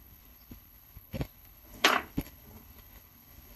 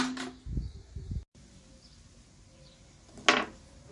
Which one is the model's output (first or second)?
first